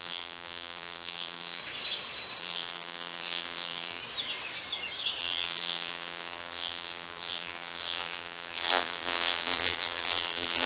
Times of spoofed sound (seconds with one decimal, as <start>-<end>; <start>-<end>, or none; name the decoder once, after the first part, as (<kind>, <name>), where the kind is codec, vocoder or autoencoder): 0.0-1.6 (vocoder, BigVGAN v2); 2.4-4.0; 5.2-10.7